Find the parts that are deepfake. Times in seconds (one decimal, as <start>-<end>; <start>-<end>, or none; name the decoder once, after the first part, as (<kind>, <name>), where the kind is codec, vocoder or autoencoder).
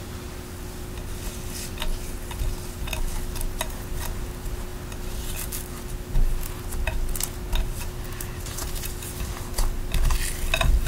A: none